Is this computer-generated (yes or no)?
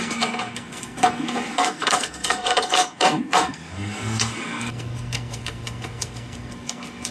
yes